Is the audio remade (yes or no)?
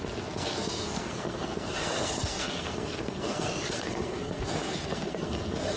yes